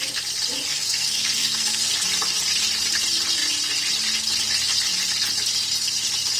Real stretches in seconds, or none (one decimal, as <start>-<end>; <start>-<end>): 0.0-0.7; 1.9-6.4